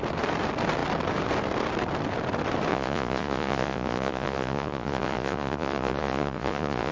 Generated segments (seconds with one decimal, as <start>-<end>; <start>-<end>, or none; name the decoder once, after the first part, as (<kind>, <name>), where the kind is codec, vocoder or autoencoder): 2.7-6.9 (vocoder, Vocos)